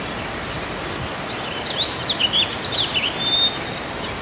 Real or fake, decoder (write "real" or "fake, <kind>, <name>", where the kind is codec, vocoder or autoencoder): real